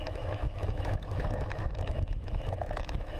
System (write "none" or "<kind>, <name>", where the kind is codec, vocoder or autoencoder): autoencoder, DAC-VAE